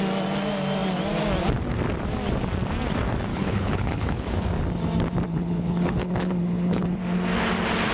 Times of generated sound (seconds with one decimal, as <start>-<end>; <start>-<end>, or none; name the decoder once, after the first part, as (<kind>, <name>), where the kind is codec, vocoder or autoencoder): 3.3-4.3 (codec, HILCodec); 5.3-7.0

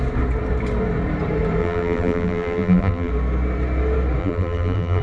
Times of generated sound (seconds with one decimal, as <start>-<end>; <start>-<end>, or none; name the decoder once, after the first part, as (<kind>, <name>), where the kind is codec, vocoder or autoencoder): 1.6-3.1 (vocoder, BigVGAN v2); 4.2-5.0

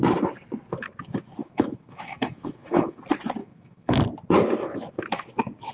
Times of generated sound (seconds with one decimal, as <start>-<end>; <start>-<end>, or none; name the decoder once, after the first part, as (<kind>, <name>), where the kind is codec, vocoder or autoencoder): 1.4-3.0 (autoencoder, DAC-VAE); 3.4-4.0

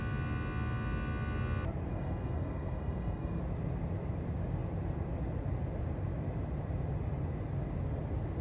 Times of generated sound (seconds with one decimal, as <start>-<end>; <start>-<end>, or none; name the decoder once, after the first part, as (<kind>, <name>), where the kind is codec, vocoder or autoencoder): 1.9-3.4 (codec, SNAC)